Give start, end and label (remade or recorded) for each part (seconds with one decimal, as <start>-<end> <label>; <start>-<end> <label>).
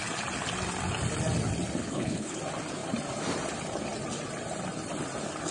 0.0-1.8 recorded; 1.8-2.4 remade; 2.4-5.5 recorded